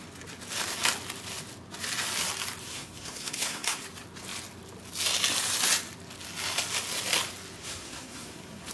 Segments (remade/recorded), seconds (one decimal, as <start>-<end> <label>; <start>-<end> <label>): 0.0-2.6 recorded; 2.6-3.8 remade; 3.8-7.6 recorded; 7.6-8.7 remade